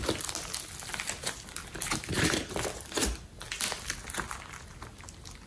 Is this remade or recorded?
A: recorded